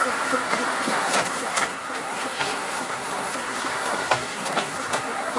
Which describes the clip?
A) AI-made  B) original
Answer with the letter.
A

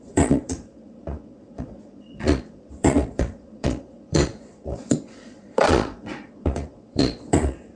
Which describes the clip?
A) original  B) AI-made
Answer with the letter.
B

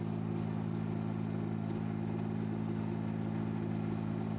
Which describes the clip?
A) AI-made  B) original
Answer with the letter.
B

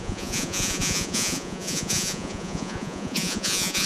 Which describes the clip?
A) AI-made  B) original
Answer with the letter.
A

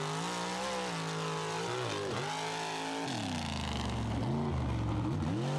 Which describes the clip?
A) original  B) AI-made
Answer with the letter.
A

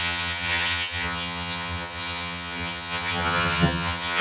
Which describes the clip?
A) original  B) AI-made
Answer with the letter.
B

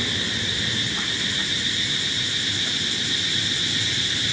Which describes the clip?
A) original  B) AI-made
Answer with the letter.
A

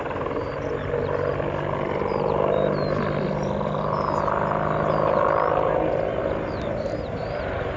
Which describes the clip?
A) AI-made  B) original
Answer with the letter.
B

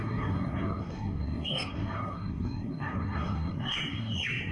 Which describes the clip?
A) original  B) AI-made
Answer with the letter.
B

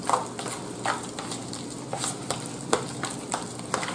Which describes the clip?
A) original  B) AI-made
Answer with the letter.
A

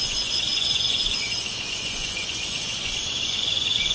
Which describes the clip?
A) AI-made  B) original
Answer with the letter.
A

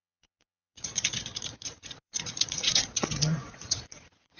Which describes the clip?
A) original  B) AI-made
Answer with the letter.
B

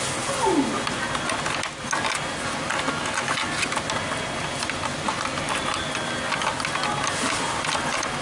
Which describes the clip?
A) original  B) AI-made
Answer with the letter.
A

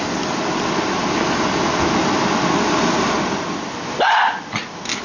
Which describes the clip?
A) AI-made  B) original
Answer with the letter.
B